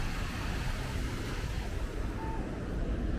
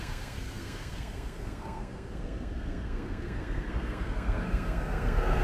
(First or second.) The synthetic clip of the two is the second